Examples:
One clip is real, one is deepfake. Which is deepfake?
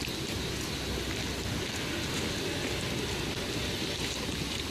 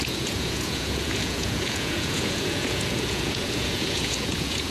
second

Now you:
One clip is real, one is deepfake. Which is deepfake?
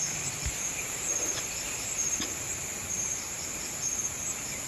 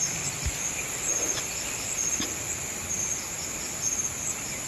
first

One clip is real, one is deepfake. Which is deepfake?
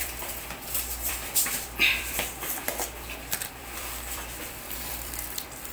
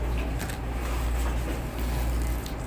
first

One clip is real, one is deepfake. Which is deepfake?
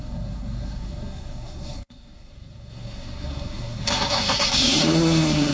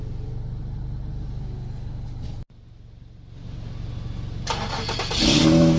first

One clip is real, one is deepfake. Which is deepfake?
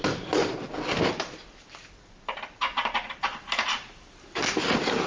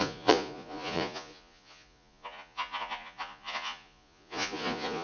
second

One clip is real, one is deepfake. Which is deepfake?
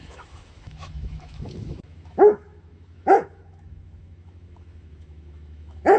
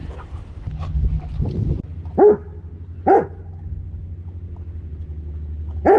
first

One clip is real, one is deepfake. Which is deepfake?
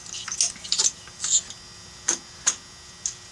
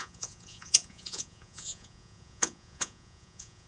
second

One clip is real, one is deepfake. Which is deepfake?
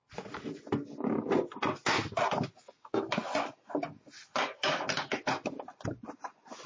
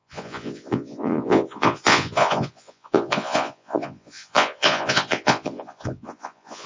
second